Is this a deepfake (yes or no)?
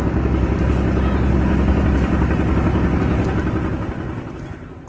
no